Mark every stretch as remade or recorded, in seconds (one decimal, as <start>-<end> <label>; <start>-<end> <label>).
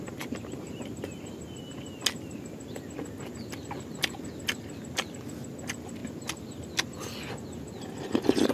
0.0-8.5 recorded